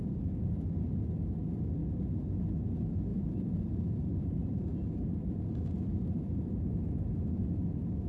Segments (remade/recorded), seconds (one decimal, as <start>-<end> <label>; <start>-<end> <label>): 0.0-3.1 recorded; 3.1-6.5 remade; 6.5-8.1 recorded